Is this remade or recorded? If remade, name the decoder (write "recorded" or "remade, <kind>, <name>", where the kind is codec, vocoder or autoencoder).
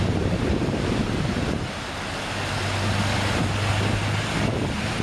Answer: recorded